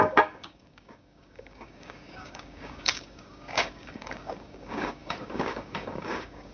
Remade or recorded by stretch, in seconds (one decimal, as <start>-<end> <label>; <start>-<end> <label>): 0.0-6.5 remade